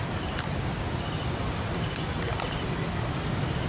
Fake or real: real